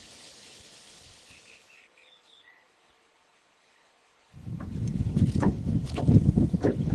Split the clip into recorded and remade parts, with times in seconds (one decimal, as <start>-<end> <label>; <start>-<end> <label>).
0.0-6.9 remade